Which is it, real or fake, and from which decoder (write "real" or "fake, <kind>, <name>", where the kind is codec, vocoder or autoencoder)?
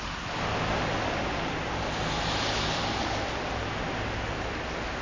real